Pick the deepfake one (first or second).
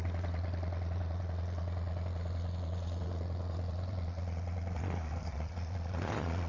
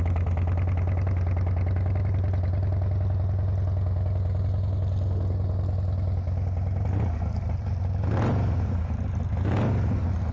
first